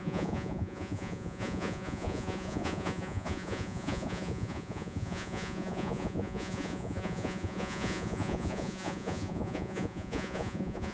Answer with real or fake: fake